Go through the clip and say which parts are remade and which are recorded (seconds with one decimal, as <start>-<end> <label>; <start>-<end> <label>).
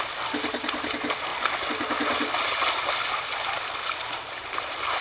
0.0-5.0 recorded